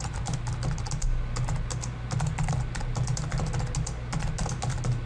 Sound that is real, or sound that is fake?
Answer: real